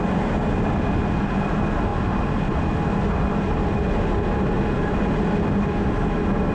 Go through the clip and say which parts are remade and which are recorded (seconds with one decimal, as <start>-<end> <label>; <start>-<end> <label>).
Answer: 0.0-6.5 recorded

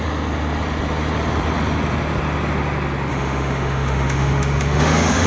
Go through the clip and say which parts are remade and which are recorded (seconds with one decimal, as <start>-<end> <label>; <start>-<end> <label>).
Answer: 0.0-3.1 recorded; 3.1-5.3 remade

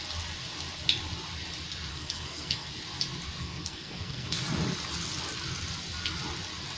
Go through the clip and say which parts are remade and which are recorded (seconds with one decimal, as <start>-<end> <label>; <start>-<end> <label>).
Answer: 0.0-1.9 recorded; 1.9-2.7 remade; 2.7-3.4 recorded; 3.4-4.4 remade; 4.4-6.8 recorded

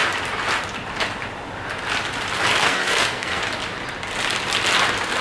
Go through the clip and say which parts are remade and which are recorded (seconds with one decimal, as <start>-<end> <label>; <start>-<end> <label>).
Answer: 0.0-2.6 recorded; 2.6-3.4 remade; 3.4-5.2 recorded

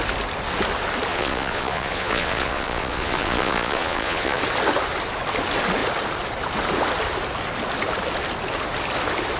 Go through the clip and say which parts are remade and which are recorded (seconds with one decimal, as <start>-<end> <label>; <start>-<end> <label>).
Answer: 0.0-1.1 recorded; 1.1-4.4 remade; 4.4-9.4 recorded